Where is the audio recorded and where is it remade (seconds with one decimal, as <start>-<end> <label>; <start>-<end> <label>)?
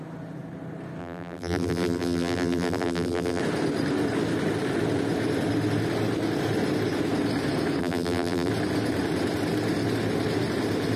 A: 0.0-1.0 recorded; 1.0-3.4 remade; 3.4-7.8 recorded; 7.8-8.5 remade; 8.5-11.0 recorded